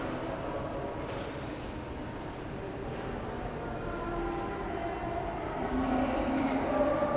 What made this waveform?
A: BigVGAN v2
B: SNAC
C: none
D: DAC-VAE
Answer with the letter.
C